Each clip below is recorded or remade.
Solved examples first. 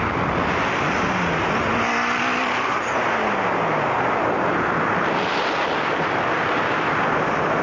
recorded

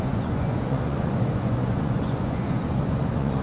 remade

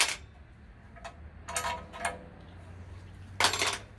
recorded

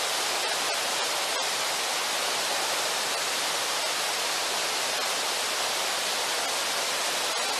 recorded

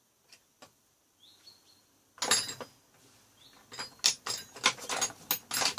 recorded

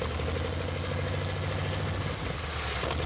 recorded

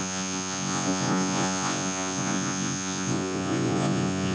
remade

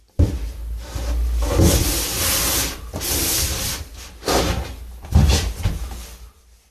recorded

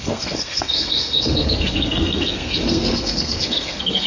remade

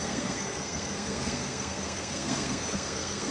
remade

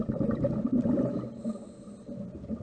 recorded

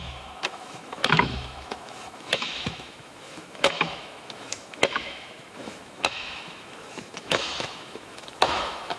remade